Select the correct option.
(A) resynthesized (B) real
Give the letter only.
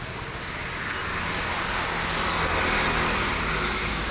B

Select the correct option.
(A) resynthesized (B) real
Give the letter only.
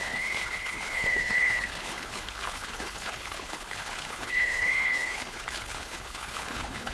A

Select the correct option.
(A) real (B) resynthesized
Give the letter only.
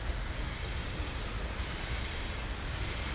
B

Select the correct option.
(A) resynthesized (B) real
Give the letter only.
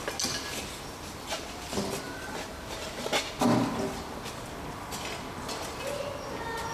B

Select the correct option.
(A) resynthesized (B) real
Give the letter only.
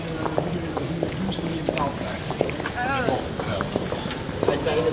B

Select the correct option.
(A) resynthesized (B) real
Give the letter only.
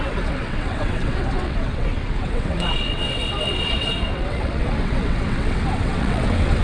A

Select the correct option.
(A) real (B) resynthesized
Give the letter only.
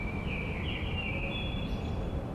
A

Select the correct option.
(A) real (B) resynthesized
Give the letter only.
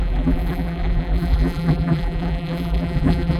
B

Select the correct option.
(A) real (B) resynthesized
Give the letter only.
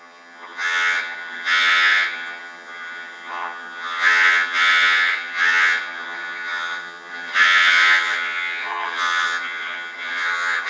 B